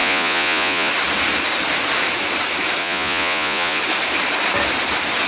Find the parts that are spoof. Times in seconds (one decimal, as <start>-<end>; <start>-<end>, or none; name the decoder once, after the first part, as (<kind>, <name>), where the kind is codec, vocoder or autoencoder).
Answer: 0.0-0.9 (vocoder, Vocos); 2.8-3.8